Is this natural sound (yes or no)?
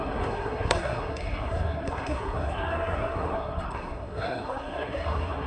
no